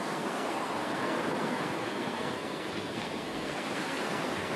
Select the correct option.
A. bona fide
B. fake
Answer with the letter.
B